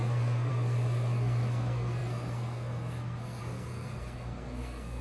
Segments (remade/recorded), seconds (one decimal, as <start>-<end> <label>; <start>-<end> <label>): 0.0-5.0 remade